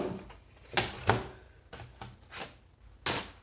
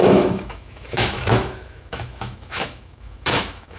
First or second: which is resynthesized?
second